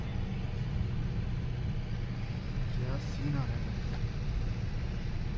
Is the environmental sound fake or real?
real